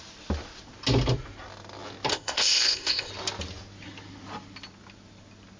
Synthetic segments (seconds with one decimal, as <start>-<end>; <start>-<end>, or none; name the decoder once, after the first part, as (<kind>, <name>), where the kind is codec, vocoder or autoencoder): 2.1-3.1 (codec, ZipCodec)